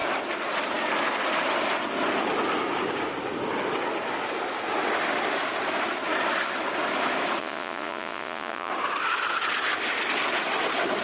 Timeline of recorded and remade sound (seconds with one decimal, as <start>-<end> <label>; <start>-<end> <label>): 0.0-7.4 recorded; 7.4-8.7 remade; 8.7-11.0 recorded